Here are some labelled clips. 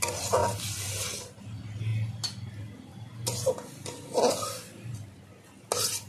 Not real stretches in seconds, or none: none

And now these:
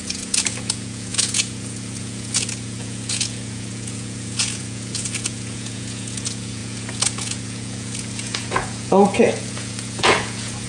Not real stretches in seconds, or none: 0.0-10.7 (vocoder, Vocos)

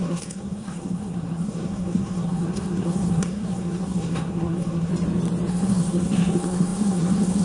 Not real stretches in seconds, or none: 0.0-4.9 (codec, SNAC); 5.5-7.4

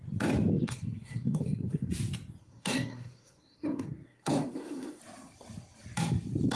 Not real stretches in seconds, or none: 0.5-1.9 (codec, SNAC); 2.4-5.0

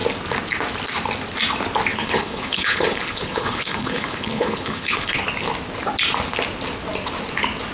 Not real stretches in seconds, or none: 1.9-5.2 (codec, HILCodec)

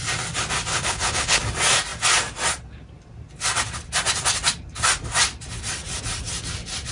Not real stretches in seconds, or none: 0.7-1.4 (codec, HILCodec)

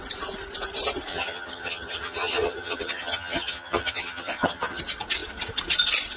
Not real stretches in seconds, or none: 1.1-4.8 (vocoder, HiFi-GAN)